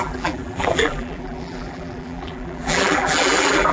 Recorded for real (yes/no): no